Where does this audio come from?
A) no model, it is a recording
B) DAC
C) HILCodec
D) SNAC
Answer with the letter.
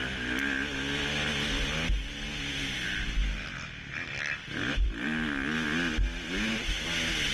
A